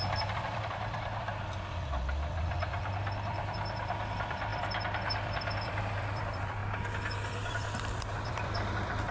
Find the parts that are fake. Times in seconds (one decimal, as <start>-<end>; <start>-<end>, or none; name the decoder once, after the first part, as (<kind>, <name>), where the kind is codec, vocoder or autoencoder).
0.0-6.6 (vocoder, BigVGAN v2); 7.5-9.1